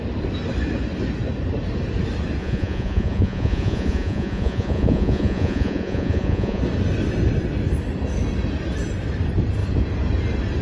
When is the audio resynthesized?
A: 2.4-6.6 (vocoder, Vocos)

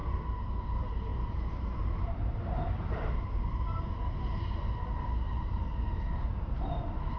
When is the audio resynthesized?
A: none